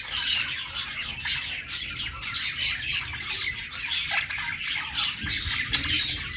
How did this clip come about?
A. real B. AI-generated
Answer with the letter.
A